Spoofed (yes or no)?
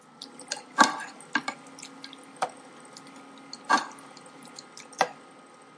no